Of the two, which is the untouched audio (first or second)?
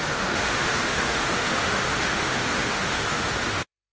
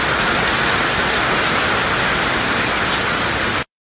second